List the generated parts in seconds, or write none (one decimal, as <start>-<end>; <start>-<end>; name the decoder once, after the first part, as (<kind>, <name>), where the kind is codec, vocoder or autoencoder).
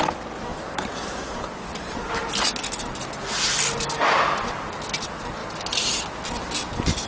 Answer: 0.5-2.1 (vocoder, BigVGAN v2)